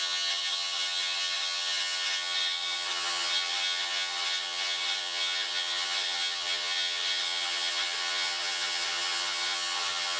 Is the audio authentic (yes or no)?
no